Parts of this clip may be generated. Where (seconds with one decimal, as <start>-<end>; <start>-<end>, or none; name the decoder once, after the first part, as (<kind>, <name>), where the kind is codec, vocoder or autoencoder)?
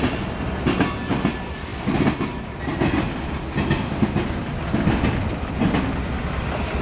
none